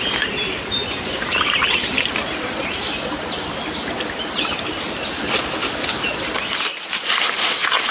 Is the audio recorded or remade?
recorded